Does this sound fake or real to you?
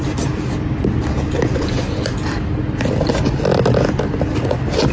real